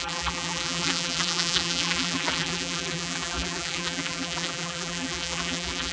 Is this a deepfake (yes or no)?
yes